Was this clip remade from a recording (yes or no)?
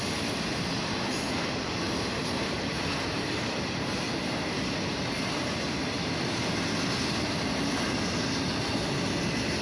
no